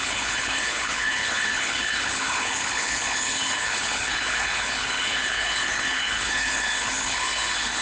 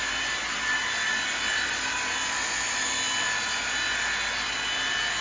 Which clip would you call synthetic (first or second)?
first